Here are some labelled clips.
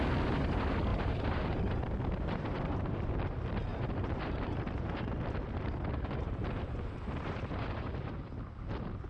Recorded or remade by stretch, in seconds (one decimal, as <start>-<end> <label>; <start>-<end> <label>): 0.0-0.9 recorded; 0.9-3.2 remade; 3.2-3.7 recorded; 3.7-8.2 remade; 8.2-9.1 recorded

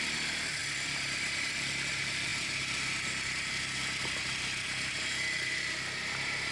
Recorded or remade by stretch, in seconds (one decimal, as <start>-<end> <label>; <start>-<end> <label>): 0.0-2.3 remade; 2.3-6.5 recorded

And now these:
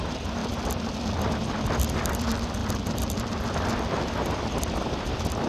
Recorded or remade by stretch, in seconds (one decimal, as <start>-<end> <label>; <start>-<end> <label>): 0.0-0.4 remade; 0.4-2.1 recorded; 2.1-2.6 remade; 2.6-3.7 recorded; 3.7-5.5 remade